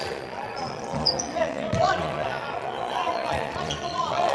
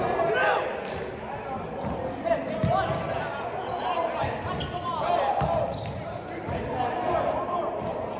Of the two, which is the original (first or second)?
second